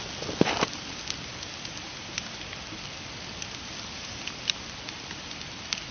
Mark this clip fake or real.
real